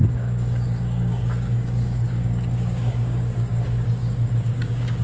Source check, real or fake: fake